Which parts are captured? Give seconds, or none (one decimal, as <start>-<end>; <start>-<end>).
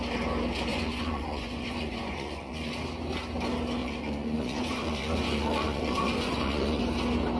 0.0-0.7; 2.7-3.8; 6.8-7.4